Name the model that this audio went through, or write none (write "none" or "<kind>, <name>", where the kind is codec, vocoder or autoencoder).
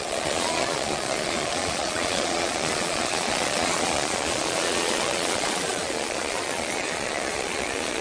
vocoder, Vocos